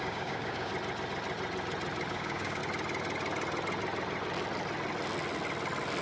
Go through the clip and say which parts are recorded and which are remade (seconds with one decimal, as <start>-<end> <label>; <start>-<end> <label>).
0.0-0.7 remade; 0.7-2.1 recorded; 2.1-2.6 remade; 2.6-6.0 recorded